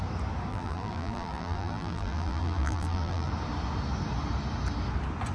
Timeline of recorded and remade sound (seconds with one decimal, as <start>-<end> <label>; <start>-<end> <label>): 0.0-0.5 recorded; 0.5-3.3 remade; 3.3-5.3 recorded